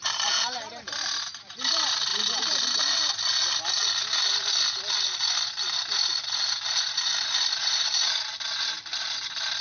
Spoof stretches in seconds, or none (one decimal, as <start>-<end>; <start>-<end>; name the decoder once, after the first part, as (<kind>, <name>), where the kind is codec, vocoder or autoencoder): 0.0-3.3 (vocoder, BigVGAN v2); 8.2-9.6